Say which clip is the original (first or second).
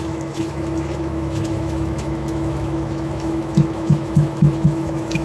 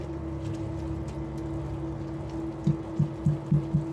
second